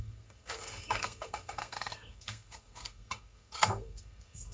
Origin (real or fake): fake